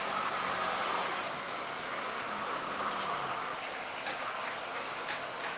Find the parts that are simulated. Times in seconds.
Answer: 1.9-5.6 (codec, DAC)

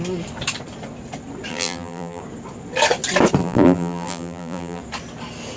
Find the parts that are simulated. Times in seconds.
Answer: 1.5-2.2 (vocoder, BigVGAN v2); 3.4-4.8

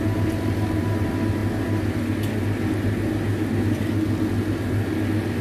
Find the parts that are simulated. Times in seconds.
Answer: none

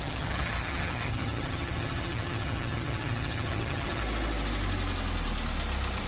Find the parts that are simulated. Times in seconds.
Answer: 0.0-4.0 (vocoder, HiFi-GAN)

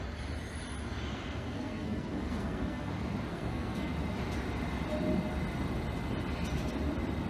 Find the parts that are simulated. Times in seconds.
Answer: 1.1-2.9 (codec, SNAC); 3.3-3.9

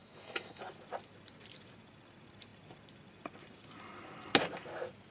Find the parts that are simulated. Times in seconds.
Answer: 0.0-0.6 (autoencoder, DAC-VAE)

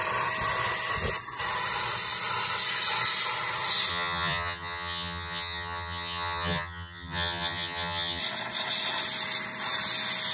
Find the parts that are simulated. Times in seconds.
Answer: 3.9-8.2 (vocoder, HiFi-GAN)

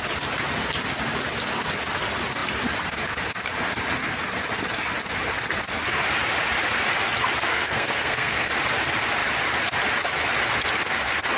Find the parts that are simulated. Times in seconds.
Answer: 7.5-8.5 (codec, SNAC)